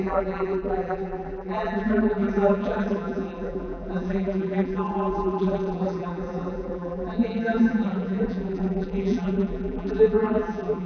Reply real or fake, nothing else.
fake